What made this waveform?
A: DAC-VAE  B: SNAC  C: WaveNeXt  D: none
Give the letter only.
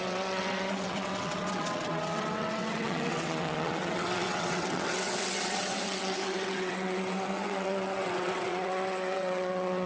C